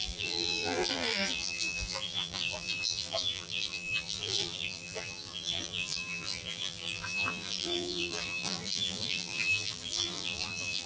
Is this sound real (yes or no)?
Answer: no